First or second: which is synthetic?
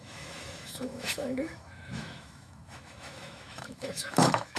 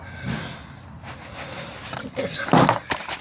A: first